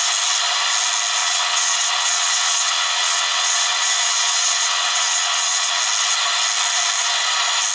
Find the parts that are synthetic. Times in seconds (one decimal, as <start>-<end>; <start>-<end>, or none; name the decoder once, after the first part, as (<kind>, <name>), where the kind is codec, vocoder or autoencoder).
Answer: 1.2-5.8 (vocoder, WaveNeXt)